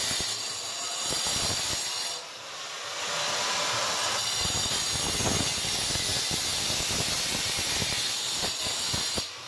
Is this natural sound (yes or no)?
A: yes